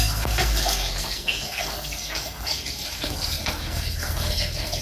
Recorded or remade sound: remade